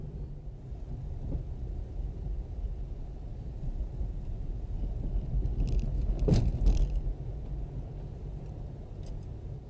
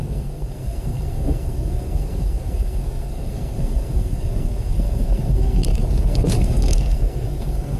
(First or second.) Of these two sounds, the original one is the first